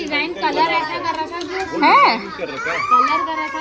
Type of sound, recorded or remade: recorded